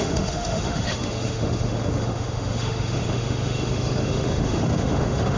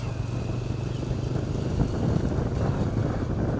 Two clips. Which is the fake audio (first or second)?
first